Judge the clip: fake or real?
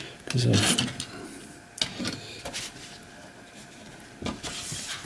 real